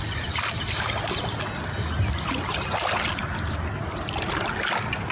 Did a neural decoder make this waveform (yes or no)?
no